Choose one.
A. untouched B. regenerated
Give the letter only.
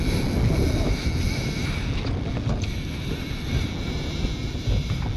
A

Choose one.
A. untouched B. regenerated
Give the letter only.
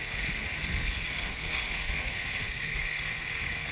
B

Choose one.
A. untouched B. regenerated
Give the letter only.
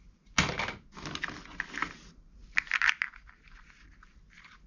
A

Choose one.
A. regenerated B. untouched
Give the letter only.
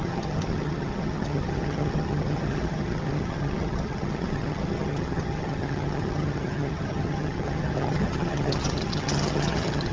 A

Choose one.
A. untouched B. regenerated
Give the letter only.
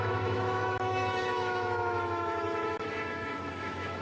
B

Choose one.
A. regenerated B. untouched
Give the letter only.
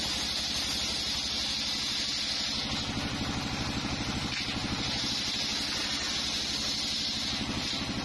B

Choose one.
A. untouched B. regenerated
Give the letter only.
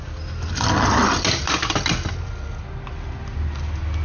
A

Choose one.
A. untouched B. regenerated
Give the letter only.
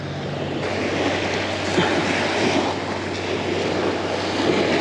A